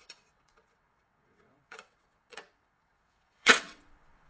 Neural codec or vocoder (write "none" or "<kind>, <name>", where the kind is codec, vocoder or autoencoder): vocoder, WaveNeXt